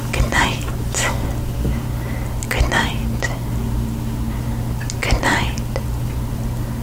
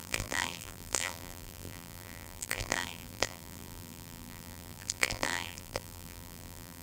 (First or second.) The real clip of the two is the first